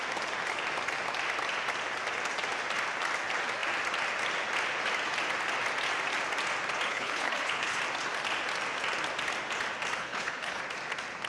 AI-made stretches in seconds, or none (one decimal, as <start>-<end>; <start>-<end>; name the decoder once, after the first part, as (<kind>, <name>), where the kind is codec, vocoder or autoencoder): 6.9-7.8 (codec, HILCodec); 10.0-10.6